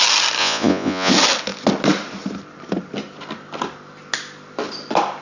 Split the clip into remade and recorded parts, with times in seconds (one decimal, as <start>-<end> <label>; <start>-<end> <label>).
0.0-0.4 recorded; 0.4-1.1 remade; 1.1-5.2 recorded